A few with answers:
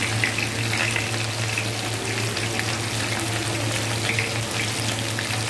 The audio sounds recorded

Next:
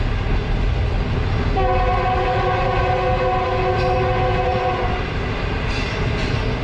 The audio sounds recorded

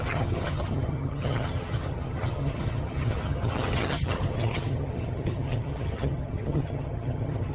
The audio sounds remade